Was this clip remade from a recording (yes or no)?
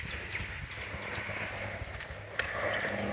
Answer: no